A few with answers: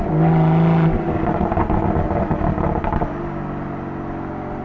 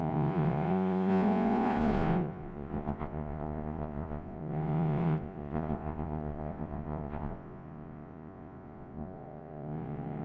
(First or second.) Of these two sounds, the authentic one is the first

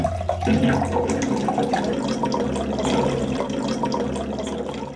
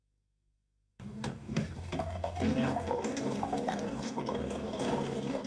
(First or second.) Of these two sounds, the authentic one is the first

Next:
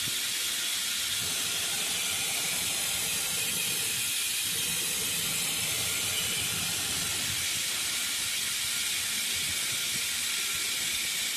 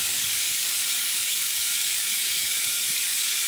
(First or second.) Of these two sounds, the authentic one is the first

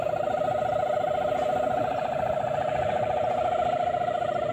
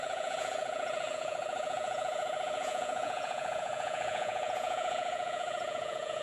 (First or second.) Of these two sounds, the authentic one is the first